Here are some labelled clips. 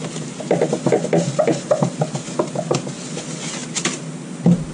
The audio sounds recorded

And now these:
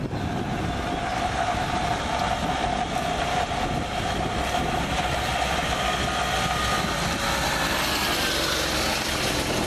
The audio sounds recorded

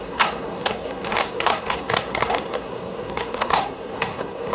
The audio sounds remade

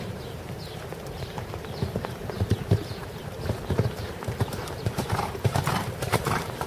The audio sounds remade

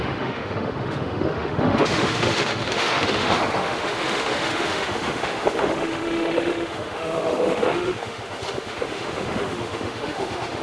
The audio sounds remade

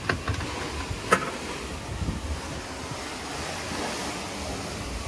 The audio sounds recorded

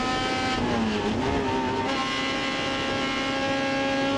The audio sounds recorded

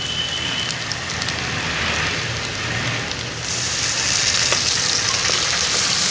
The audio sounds recorded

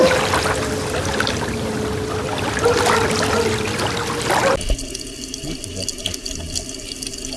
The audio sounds recorded